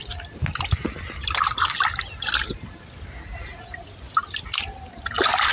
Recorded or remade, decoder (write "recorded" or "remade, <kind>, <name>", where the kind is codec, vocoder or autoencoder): recorded